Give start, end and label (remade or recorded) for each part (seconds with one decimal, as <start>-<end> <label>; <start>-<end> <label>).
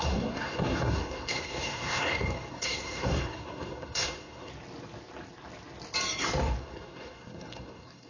0.0-4.5 remade; 4.5-6.6 recorded; 6.6-8.1 remade